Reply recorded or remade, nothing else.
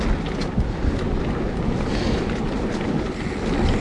recorded